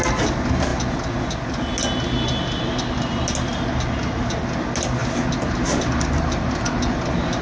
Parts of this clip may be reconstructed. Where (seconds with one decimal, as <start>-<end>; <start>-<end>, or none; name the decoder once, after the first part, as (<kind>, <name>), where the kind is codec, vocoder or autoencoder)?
none